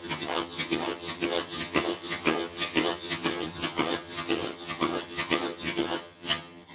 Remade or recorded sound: remade